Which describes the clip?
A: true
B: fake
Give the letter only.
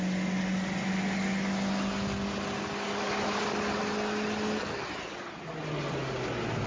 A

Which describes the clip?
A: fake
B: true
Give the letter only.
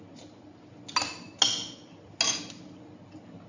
B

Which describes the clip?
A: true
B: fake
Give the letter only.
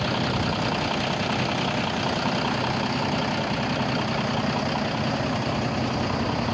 A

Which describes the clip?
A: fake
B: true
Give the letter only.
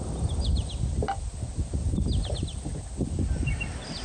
B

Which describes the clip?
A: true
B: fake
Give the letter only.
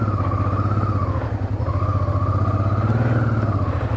A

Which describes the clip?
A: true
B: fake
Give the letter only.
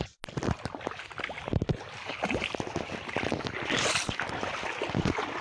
A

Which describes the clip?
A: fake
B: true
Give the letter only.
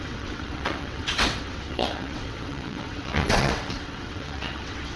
A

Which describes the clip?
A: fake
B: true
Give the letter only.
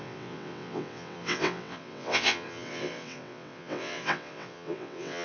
A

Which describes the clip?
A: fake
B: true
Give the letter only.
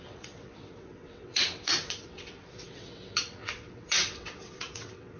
A